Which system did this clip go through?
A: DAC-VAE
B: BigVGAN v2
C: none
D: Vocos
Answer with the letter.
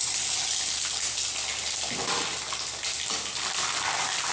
C